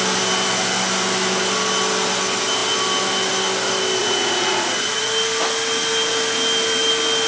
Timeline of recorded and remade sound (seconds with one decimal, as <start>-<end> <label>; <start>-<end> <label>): 0.0-4.0 recorded; 4.0-5.1 remade; 5.1-7.3 recorded